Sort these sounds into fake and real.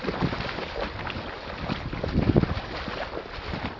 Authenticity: real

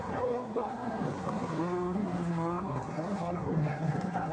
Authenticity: fake